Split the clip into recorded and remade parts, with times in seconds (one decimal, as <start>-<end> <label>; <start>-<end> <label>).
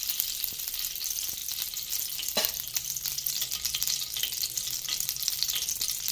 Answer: 0.0-1.4 remade; 1.4-2.3 recorded; 2.3-6.1 remade